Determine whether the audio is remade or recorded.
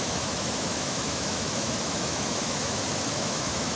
remade